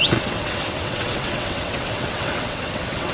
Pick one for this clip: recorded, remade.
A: remade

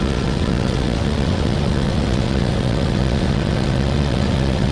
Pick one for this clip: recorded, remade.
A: remade